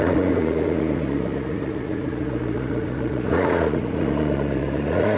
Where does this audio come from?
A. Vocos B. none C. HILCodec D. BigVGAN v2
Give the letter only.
A